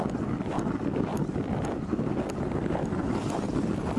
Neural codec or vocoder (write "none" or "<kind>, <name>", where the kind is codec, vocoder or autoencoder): none